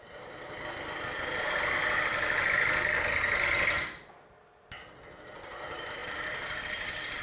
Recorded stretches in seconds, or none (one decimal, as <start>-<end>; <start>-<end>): 0.0-6.0